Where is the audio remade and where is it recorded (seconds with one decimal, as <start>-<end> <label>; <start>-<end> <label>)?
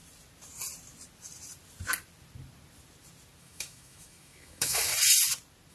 0.0-3.4 recorded; 3.4-4.9 remade; 4.9-5.7 recorded